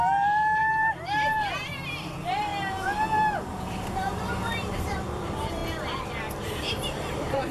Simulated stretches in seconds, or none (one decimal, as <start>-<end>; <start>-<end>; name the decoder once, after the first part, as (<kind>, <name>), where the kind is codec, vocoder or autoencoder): 0.0-2.5 (vocoder, BigVGAN v2); 3.4-5.6; 7.1-7.5